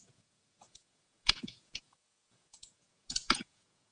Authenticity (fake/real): fake